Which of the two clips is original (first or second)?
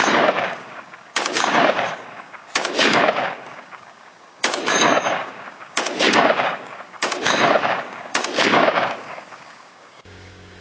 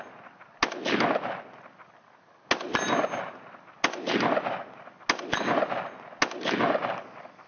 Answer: second